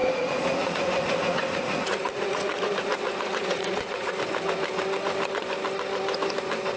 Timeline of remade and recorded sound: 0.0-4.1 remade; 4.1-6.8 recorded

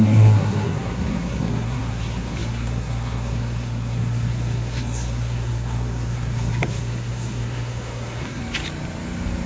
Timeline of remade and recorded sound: 0.0-8.4 remade; 8.4-9.5 recorded

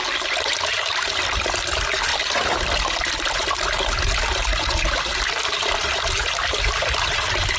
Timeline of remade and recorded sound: 0.0-7.6 recorded

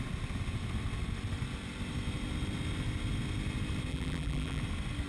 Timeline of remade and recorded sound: 0.0-3.9 recorded; 3.9-4.6 remade; 4.6-5.1 recorded

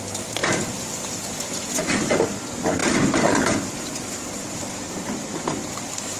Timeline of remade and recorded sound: 0.0-0.4 recorded; 0.4-1.1 remade; 1.1-2.8 recorded; 2.8-6.2 remade